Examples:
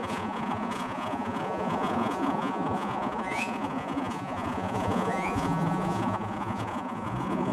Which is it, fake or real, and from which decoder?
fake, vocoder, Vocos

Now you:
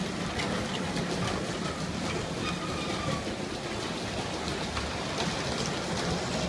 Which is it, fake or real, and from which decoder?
real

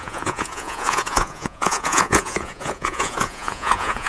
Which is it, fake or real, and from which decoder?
fake, vocoder, Vocos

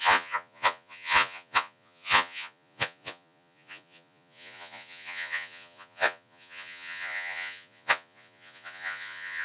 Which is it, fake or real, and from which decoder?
fake, vocoder, Vocos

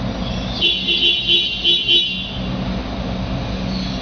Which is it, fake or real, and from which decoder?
real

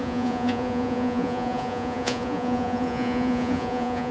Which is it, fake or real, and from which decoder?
fake, vocoder, Vocos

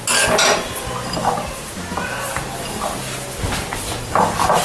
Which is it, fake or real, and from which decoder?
real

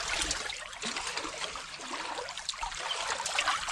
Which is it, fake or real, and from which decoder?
real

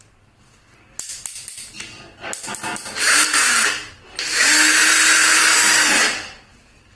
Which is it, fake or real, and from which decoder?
real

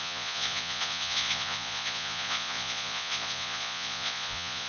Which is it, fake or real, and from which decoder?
fake, vocoder, Vocos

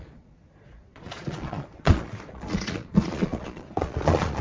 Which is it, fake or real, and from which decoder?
fake, vocoder, Vocos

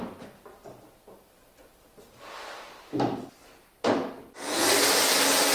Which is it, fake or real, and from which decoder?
real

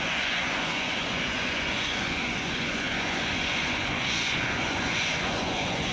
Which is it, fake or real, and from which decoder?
fake, vocoder, Vocos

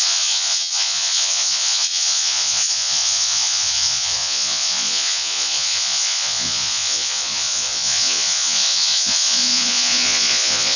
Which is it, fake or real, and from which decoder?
fake, vocoder, Vocos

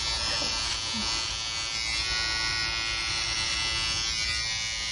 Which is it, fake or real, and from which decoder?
real